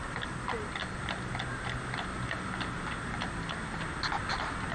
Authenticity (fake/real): real